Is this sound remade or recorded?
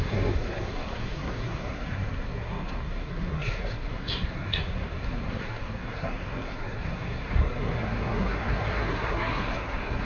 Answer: remade